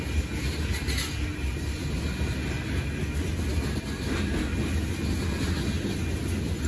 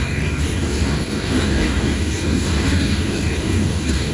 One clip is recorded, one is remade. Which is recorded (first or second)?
first